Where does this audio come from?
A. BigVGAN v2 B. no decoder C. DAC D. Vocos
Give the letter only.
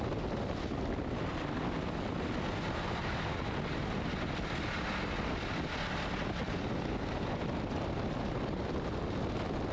B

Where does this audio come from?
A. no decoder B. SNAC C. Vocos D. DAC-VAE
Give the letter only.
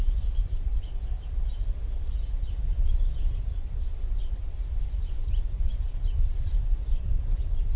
A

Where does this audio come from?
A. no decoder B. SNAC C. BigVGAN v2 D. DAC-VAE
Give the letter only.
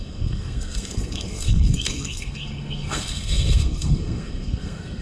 B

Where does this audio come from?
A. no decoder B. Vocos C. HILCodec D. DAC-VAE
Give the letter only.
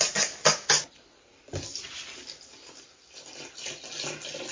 A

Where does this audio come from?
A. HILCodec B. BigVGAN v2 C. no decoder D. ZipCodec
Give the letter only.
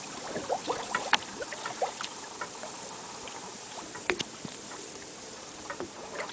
B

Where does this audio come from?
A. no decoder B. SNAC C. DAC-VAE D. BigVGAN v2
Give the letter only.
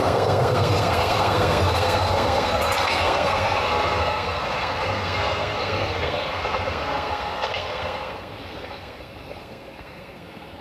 B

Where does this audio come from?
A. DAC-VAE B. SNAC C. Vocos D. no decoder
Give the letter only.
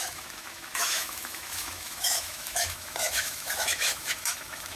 A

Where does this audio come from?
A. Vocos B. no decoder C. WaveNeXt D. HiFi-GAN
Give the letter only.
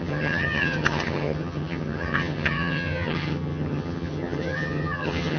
D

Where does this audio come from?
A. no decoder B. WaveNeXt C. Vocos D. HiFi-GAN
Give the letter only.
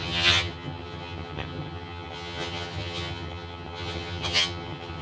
D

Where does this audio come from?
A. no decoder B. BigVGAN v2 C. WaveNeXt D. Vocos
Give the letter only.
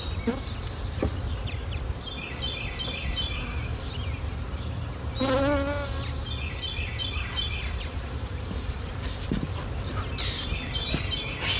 A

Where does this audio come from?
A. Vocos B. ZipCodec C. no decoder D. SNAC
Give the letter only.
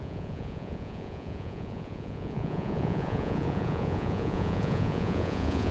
A